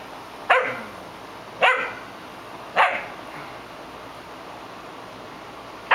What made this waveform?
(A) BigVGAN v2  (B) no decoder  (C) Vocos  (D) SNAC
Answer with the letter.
B